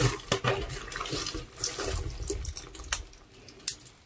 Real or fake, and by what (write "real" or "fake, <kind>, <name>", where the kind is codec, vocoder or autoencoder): real